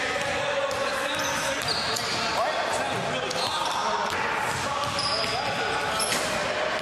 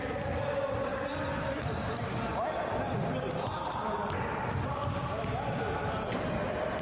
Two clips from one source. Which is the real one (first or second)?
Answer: first